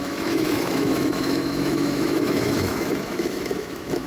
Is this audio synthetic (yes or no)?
yes